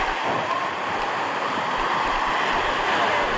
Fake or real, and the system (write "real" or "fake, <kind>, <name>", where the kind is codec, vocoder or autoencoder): real